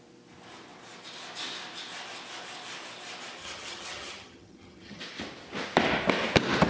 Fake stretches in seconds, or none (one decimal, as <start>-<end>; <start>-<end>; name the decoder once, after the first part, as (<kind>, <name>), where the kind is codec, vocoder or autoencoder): 3.4-5.0 (vocoder, HiFi-GAN)